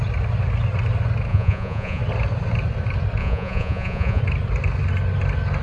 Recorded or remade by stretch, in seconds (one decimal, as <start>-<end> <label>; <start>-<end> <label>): 0.0-1.3 recorded; 1.3-2.0 remade; 2.0-3.2 recorded; 3.2-4.2 remade; 4.2-5.6 recorded